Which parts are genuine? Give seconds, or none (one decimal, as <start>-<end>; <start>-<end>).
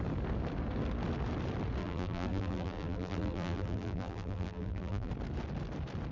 0.0-1.8; 5.1-6.1